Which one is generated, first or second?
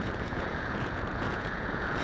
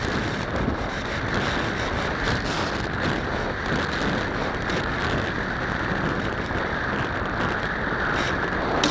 first